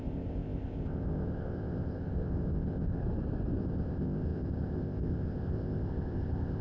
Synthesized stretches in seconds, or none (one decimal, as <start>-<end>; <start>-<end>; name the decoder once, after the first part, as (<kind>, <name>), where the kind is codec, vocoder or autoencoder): 0.0-3.0 (codec, ZipCodec); 3.6-6.6